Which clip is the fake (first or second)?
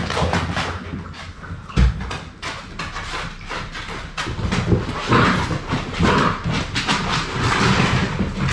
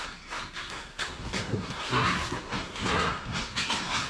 second